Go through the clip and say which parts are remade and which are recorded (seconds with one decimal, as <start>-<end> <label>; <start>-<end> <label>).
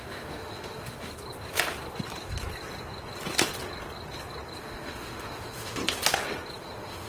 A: 0.0-1.1 remade; 1.1-4.6 recorded; 4.6-5.8 remade; 5.8-6.6 recorded; 6.6-7.1 remade